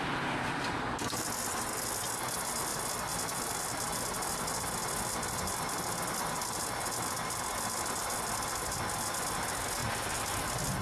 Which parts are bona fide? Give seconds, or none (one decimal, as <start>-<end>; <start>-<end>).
0.0-10.8

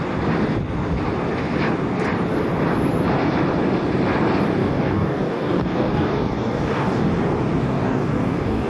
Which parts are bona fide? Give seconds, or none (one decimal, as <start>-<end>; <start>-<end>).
0.0-4.6; 7.1-7.6

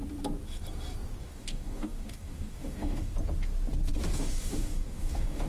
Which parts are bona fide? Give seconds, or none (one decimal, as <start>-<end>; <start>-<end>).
0.0-1.2; 3.1-4.1

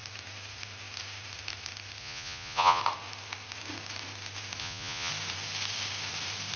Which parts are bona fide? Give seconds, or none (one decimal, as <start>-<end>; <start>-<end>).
0.0-2.0; 2.8-4.6; 5.1-6.6

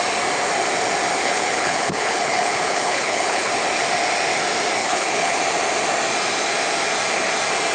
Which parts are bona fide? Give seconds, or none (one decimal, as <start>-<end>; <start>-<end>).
0.0-1.2; 3.5-4.8; 5.4-7.7